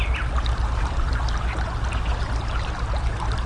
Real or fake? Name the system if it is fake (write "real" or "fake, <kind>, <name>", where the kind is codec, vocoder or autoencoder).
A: real